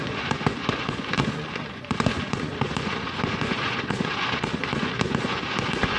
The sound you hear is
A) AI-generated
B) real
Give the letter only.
A